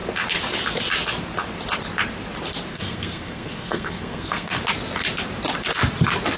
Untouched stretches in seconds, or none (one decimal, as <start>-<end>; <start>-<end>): 0.0-2.7; 4.6-6.4